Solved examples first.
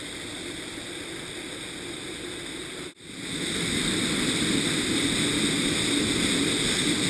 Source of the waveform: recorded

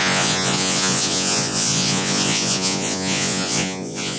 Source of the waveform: remade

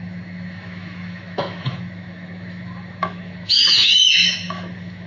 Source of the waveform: remade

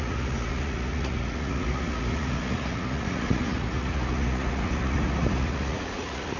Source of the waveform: remade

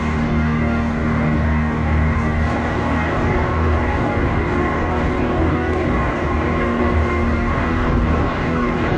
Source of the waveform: remade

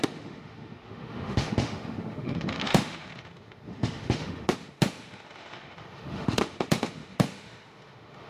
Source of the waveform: remade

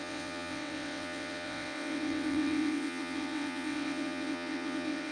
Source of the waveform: remade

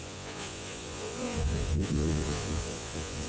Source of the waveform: remade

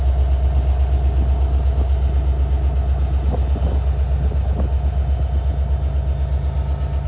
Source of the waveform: recorded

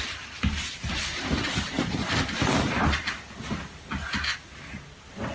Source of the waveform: recorded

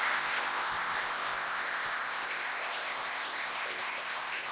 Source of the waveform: remade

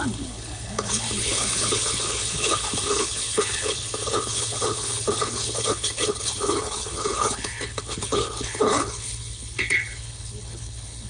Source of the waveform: remade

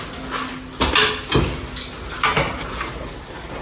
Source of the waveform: recorded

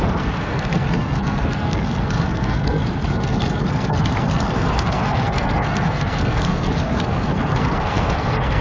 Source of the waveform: remade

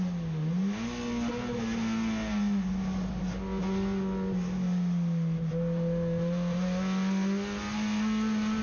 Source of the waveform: recorded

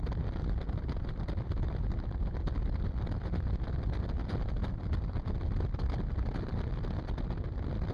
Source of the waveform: recorded